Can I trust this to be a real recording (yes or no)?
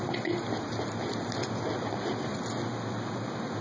yes